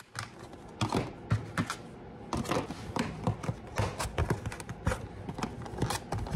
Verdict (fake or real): real